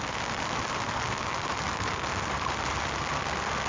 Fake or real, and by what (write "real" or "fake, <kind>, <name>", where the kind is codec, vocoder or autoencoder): real